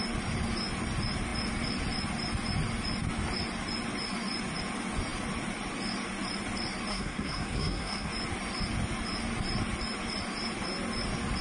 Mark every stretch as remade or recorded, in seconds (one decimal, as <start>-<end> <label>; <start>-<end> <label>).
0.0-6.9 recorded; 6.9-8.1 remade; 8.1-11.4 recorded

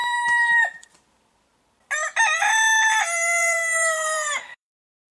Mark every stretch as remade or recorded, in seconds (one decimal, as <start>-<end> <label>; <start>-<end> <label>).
0.0-0.9 remade; 0.9-2.9 recorded; 2.9-5.1 remade

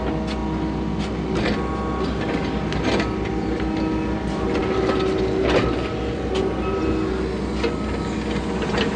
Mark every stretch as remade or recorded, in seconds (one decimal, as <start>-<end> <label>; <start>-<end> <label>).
0.0-9.0 recorded